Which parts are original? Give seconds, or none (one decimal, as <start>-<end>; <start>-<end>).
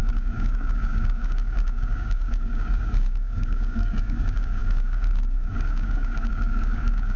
none